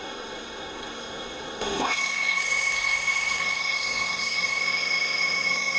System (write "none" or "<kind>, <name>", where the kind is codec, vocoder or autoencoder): codec, SNAC